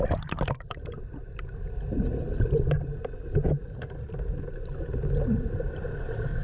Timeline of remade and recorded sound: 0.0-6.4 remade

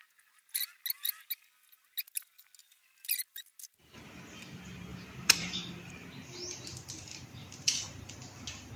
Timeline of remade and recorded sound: 0.0-4.9 recorded; 4.9-5.9 remade; 5.9-6.7 recorded; 6.7-8.1 remade; 8.1-8.8 recorded

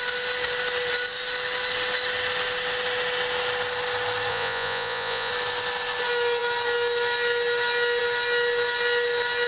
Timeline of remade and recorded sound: 0.0-4.3 recorded; 4.3-5.3 remade; 5.3-9.5 recorded

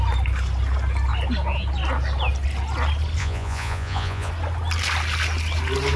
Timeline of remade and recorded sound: 0.0-3.2 recorded; 3.2-4.3 remade; 4.3-6.0 recorded

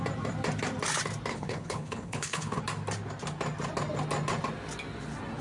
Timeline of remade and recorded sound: 0.0-1.3 recorded; 1.3-2.6 remade; 2.6-5.4 recorded

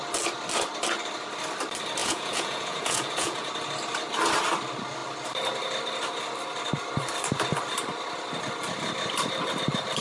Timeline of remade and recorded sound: 0.0-2.0 recorded; 2.0-3.5 remade; 3.5-10.0 recorded